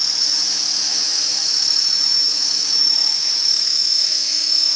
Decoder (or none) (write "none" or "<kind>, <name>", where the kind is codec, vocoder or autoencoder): autoencoder, DAC-VAE